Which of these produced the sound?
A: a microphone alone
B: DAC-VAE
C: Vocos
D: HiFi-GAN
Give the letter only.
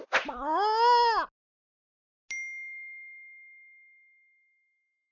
A